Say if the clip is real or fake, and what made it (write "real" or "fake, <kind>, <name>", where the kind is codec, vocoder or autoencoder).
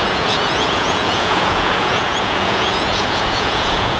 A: fake, vocoder, Vocos